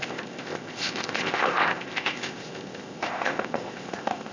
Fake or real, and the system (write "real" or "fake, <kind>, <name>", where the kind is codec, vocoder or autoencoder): fake, codec, ZipCodec